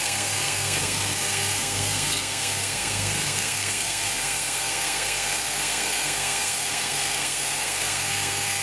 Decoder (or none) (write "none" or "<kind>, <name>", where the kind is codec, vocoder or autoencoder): codec, SNAC